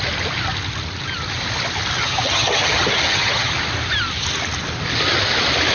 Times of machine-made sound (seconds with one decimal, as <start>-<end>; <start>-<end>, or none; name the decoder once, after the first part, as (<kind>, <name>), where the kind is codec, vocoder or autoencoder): 2.0-3.5 (vocoder, HiFi-GAN)